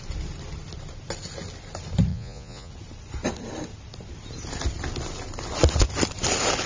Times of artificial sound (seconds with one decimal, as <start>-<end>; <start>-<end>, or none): 2.1-2.7